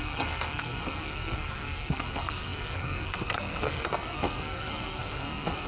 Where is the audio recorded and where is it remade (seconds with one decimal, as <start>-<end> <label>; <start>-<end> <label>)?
0.0-5.7 remade